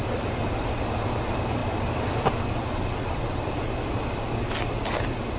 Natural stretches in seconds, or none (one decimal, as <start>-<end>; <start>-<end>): 0.0-5.4